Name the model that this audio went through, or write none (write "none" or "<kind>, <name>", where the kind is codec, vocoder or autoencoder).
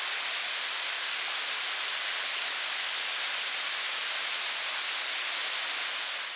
none